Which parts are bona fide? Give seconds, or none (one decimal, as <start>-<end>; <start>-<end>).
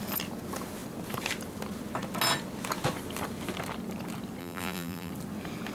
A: 0.0-4.4; 5.1-5.7